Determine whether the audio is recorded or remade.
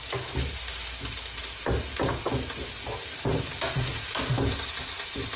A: recorded